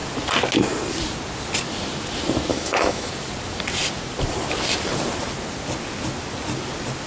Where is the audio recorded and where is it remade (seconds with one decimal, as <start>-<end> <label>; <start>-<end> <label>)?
0.0-2.5 recorded; 2.5-3.1 remade; 3.1-7.1 recorded